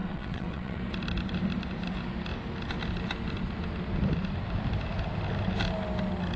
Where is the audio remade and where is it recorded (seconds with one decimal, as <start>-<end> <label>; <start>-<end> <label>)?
0.0-0.8 remade; 0.8-6.4 recorded